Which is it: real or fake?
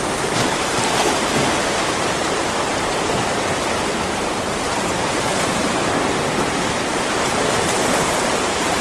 fake